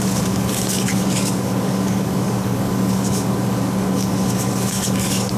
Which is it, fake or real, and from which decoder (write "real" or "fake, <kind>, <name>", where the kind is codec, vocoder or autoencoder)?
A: fake, codec, DAC